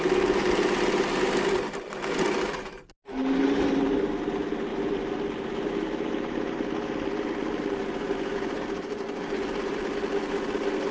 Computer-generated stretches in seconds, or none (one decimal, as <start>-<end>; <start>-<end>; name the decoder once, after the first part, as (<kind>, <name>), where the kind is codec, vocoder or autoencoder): none